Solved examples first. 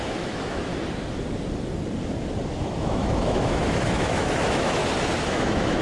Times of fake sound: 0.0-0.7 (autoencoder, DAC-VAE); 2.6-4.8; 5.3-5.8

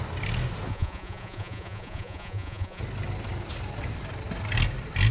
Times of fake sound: 0.7-2.8 (vocoder, Vocos)

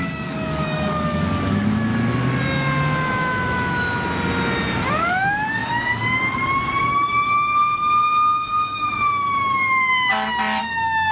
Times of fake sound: 0.0-1.9 (codec, DAC); 4.9-10.1; 10.6-11.1

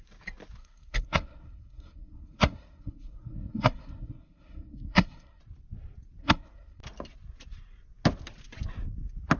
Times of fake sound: 0.6-5.4 (codec, SNAC); 6.2-6.8

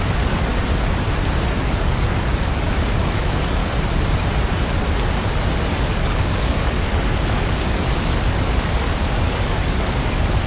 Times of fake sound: 0.0-0.5 (codec, DAC); 1.7-3.6; 5.6-10.5